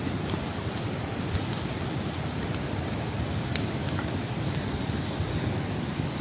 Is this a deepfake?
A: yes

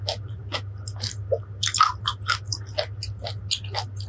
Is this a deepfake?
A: no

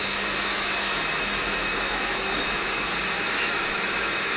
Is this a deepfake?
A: yes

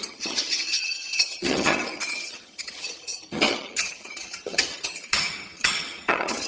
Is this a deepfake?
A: yes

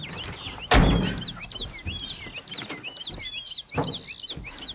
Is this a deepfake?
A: no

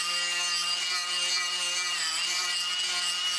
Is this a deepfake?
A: no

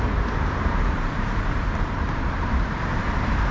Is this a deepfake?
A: yes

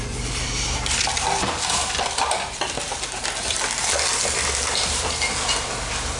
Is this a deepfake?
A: yes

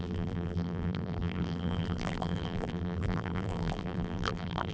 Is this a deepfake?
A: yes